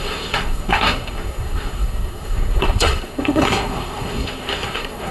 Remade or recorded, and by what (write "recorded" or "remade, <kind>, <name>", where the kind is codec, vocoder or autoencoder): remade, codec, SNAC